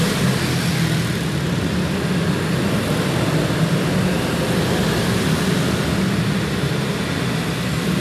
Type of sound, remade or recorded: recorded